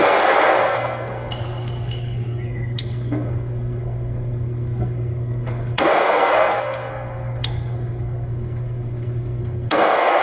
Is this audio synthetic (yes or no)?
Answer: yes